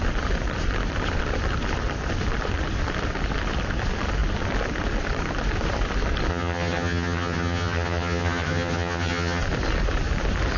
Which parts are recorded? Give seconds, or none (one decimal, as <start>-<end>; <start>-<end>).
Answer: 0.0-6.3; 9.4-10.6

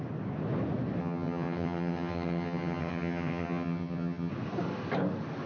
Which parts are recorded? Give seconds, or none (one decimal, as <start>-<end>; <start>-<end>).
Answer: 0.0-1.0; 4.3-5.5